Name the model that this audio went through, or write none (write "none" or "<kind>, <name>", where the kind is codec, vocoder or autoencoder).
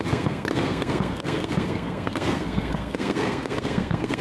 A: codec, SNAC